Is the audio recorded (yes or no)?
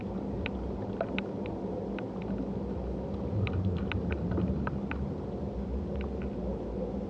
yes